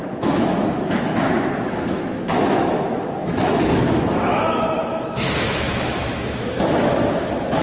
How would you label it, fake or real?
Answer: fake